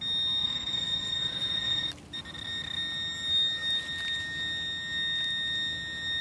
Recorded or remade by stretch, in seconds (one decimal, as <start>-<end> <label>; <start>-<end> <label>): 0.0-0.4 recorded; 0.4-1.9 remade; 1.9-6.2 recorded